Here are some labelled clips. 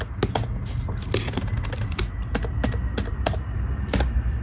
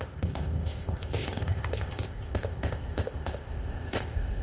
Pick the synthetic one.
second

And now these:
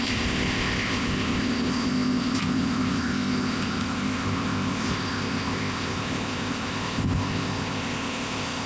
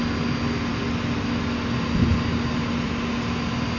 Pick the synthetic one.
first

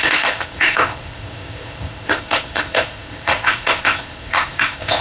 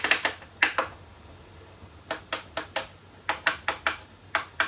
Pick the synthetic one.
first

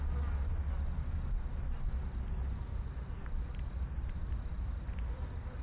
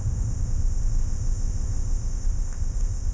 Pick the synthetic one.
second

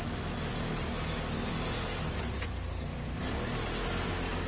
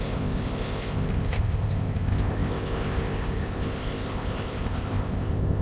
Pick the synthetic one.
second